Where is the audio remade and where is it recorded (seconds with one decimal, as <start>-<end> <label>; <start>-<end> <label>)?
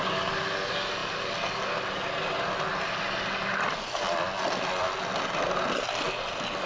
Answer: 0.0-6.7 recorded